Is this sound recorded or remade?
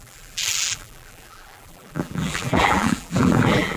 remade